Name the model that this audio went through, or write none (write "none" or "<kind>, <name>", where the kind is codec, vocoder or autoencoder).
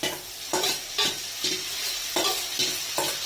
none